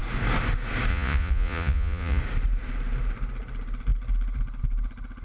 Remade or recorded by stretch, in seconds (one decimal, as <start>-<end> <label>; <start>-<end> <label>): 0.0-0.9 recorded; 0.9-2.2 remade; 2.2-5.2 recorded